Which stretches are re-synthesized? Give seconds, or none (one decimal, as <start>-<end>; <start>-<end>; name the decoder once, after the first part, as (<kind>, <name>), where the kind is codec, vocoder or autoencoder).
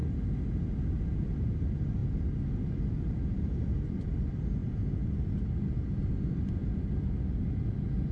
1.0-2.0 (vocoder, BigVGAN v2); 2.6-4.6; 5.3-8.1